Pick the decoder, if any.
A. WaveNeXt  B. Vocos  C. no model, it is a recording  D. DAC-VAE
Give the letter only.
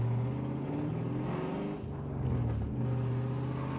C